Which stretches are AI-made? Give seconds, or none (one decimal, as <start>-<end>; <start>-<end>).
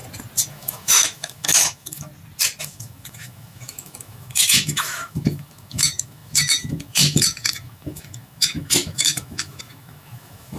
0.5-2.1; 2.6-10.6